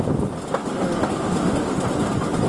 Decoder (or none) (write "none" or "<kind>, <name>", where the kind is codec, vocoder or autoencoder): none